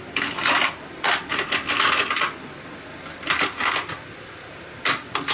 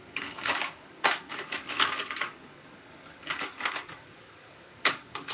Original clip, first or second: first